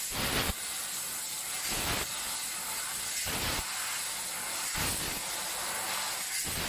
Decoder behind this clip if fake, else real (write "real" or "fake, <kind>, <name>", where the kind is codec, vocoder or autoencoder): real